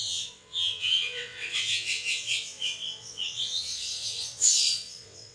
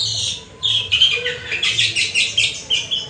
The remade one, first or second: first